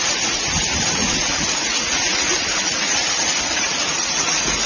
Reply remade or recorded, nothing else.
remade